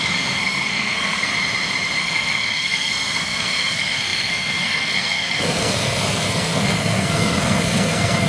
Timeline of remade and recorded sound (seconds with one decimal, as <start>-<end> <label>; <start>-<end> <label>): 0.0-1.3 remade; 1.3-2.0 recorded; 2.0-8.3 remade